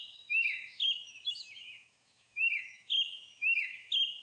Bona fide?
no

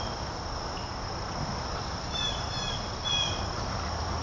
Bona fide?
yes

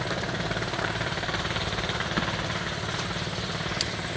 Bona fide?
no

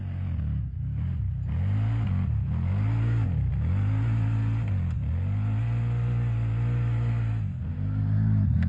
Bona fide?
yes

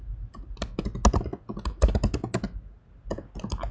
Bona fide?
yes